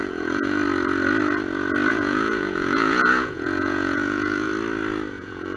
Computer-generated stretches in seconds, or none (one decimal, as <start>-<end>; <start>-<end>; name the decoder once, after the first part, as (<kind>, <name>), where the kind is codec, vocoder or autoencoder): 0.0-0.6 (vocoder, Vocos); 1.9-4.5; 5.1-5.6